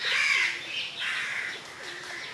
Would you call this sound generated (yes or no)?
no